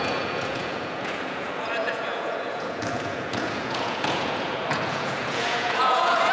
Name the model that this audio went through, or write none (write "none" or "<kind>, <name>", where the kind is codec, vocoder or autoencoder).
vocoder, Vocos